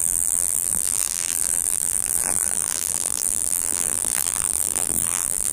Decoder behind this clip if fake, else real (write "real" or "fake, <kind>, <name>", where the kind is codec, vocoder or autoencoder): fake, vocoder, BigVGAN v2